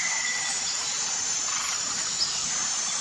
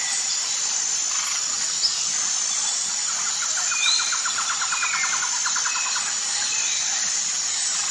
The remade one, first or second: first